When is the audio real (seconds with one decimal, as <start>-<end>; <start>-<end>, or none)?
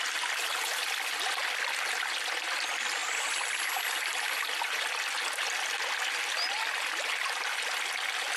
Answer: 0.0-8.4